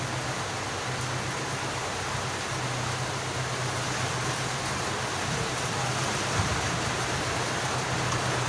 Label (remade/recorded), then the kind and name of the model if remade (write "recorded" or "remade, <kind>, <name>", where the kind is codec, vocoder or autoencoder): recorded